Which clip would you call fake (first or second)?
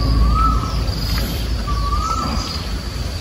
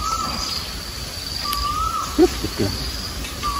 second